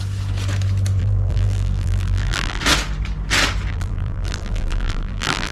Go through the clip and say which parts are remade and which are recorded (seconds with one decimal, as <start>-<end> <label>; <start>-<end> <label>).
0.0-1.0 recorded; 1.0-2.6 remade; 2.6-3.7 recorded; 3.7-5.5 remade